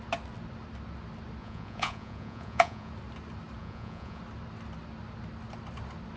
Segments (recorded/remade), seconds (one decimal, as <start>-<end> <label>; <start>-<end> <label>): 0.0-1.4 recorded; 1.4-2.9 remade; 2.9-3.6 recorded; 3.6-4.2 remade; 4.2-6.2 recorded